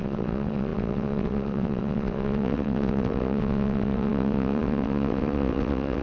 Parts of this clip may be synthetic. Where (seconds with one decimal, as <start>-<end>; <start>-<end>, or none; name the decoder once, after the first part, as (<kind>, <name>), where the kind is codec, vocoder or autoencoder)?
0.0-6.0 (vocoder, WaveNeXt)